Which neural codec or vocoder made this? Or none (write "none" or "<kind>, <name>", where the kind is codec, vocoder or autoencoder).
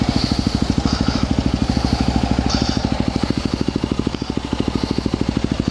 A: none